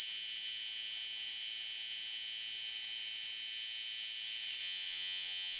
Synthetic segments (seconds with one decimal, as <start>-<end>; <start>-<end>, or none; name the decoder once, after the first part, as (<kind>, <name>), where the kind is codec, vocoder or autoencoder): 4.6-5.6 (vocoder, Vocos)

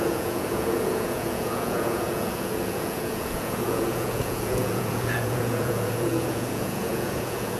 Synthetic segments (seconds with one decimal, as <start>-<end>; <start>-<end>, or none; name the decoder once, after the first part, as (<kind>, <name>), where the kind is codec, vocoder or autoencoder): 0.0-7.6 (vocoder, Vocos)